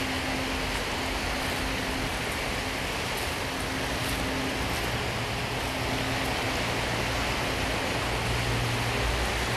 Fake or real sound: real